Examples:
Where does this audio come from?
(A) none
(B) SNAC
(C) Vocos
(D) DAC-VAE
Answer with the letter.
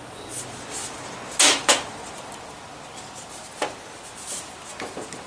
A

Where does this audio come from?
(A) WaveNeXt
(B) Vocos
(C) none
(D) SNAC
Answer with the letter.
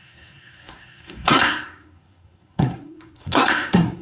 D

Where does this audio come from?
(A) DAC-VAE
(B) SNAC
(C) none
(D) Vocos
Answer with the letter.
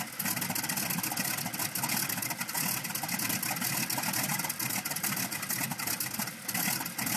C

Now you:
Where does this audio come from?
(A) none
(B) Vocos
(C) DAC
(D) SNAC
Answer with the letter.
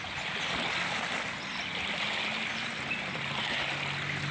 A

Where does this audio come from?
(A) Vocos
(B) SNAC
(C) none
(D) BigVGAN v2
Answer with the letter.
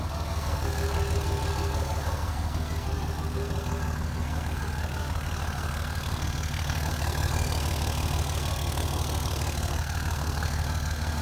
B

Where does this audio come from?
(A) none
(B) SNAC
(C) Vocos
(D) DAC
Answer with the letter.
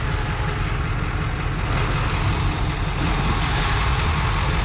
A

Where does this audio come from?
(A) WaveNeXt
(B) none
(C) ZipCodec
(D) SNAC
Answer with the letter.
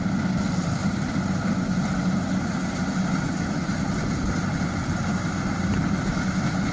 B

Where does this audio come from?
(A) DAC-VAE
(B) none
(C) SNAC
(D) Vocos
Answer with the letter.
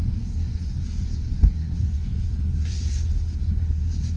C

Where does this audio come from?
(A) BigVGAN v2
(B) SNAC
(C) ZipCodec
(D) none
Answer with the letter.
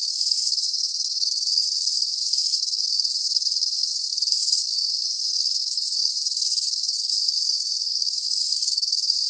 B